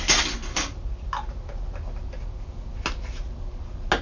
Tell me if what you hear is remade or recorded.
recorded